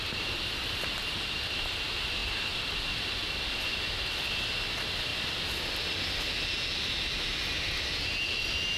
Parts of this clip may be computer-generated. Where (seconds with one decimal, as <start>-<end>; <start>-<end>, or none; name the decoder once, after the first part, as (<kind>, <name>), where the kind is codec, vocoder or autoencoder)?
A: none